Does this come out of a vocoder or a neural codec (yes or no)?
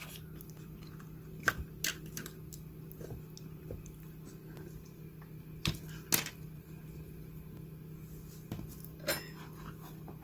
no